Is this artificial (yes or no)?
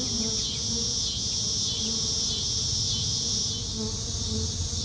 no